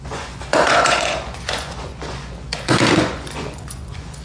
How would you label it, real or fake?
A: fake